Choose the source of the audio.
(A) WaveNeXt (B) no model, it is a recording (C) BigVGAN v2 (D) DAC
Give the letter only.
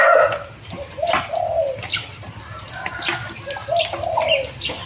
C